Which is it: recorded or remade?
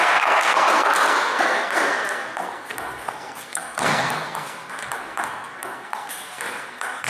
remade